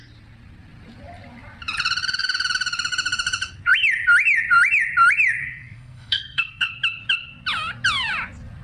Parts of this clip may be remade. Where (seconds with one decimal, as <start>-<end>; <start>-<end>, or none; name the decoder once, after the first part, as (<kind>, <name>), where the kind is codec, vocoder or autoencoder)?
5.4-6.7 (codec, SNAC)